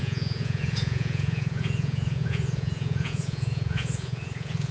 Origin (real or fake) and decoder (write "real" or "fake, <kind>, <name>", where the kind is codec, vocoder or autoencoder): fake, vocoder, Vocos